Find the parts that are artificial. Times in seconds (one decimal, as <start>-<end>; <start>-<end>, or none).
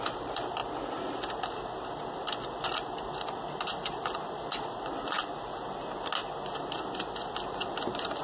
none